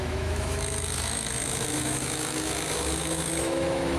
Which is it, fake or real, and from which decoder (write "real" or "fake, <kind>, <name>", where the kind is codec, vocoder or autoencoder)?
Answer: fake, autoencoder, DAC-VAE